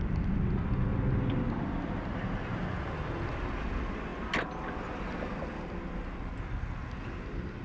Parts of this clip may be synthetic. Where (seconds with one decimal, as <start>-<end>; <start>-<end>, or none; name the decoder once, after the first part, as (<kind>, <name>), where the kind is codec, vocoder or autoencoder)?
none

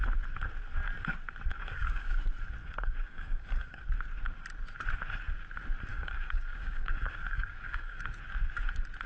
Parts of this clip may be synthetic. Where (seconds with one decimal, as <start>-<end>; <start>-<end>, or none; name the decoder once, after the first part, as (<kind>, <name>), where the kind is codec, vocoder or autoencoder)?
1.5-2.2 (codec, DAC); 2.6-3.8; 5.9-8.1